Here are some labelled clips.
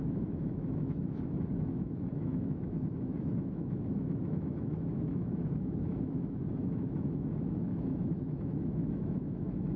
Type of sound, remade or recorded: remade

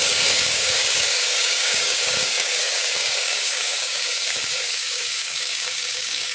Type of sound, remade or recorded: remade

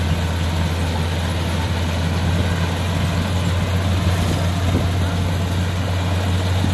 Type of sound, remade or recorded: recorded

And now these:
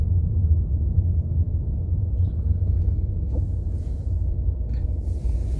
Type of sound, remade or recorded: recorded